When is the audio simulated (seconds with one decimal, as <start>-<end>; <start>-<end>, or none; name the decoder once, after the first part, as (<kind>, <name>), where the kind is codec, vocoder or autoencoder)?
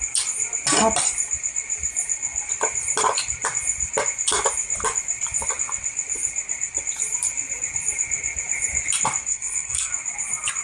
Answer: 9.3-9.9 (codec, SNAC)